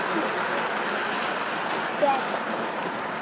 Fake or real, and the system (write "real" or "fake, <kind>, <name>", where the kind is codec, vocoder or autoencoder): real